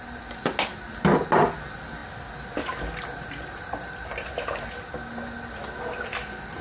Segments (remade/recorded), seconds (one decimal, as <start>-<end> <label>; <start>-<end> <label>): 0.0-6.6 recorded